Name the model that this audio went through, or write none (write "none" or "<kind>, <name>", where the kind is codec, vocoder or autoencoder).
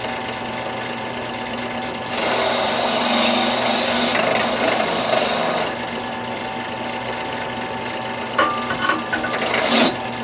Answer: none